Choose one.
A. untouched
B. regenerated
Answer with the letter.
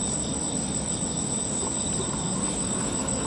A